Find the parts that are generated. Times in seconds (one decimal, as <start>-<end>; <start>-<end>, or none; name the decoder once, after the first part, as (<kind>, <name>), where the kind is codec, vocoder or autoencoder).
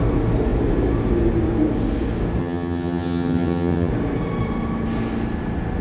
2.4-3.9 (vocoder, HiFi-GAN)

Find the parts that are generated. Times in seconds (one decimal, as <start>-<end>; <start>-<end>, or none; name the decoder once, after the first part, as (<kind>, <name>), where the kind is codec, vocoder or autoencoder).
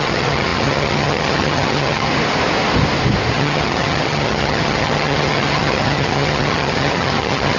0.0-2.1 (vocoder, HiFi-GAN); 3.3-7.6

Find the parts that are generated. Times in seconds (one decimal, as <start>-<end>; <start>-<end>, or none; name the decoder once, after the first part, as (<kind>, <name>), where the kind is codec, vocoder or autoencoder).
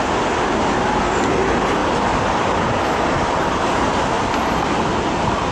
none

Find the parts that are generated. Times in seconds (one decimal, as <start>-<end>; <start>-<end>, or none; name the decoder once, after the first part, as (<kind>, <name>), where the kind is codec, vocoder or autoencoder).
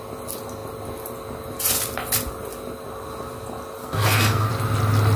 3.8-4.5 (codec, SNAC)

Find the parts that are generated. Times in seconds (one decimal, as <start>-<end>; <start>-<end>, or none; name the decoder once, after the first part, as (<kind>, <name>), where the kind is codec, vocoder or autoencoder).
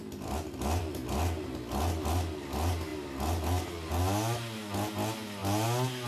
none